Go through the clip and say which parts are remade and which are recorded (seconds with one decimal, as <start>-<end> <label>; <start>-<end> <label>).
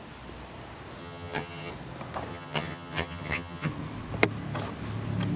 0.0-1.0 recorded; 1.0-1.7 remade; 1.7-2.3 recorded; 2.3-3.7 remade; 3.7-5.4 recorded